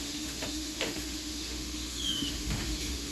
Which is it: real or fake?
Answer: fake